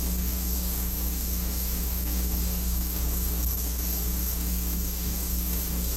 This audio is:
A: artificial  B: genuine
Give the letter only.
A